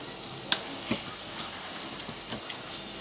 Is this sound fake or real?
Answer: real